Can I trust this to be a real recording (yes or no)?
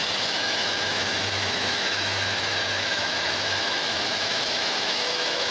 no